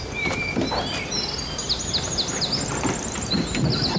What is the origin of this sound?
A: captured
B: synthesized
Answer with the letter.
A